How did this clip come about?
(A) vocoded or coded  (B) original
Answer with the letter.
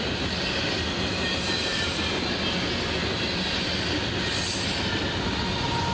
B